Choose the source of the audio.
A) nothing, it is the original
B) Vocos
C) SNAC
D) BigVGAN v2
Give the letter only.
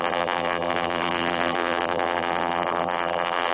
D